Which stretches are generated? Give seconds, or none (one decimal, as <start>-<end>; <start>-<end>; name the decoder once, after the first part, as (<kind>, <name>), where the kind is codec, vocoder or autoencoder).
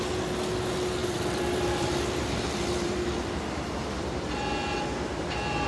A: 1.0-4.0 (vocoder, BigVGAN v2)